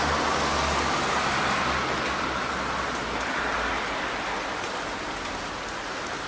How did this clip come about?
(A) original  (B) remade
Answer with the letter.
A